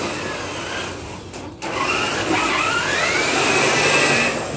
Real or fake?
real